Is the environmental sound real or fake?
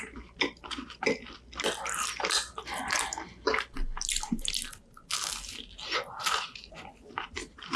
real